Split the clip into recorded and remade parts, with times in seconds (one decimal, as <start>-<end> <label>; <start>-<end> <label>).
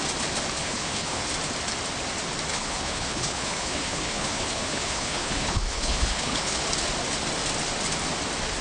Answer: 0.0-0.6 recorded; 0.6-1.3 remade; 1.3-2.5 recorded; 2.5-6.7 remade; 6.7-8.6 recorded